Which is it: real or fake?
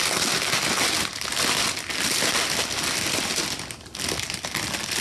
real